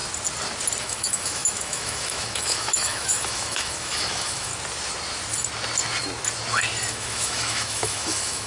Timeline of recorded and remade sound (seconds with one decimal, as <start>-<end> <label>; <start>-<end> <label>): 0.0-0.8 recorded; 0.8-4.5 remade; 4.5-6.9 recorded; 6.9-8.5 remade